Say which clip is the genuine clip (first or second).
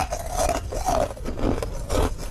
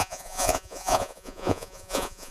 first